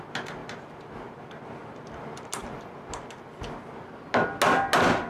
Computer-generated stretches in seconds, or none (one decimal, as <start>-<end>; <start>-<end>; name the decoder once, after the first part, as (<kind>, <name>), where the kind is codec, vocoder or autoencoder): 0.4-1.9 (vocoder, BigVGAN v2); 2.4-2.9